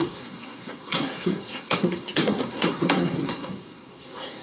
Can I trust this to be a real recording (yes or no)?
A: no